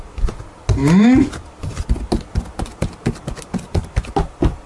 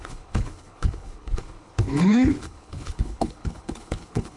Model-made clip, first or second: second